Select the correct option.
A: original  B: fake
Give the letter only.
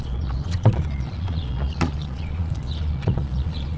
B